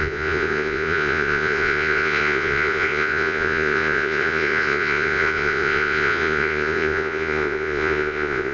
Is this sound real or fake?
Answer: fake